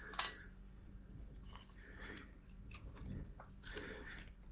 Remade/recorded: remade